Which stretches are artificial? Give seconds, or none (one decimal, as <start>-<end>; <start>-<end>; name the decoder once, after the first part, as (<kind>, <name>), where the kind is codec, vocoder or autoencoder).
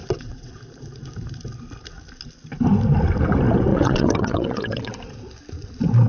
0.0-0.6 (vocoder, WaveNeXt); 3.7-4.9